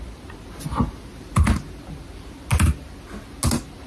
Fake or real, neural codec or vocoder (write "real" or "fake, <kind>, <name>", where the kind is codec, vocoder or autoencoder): real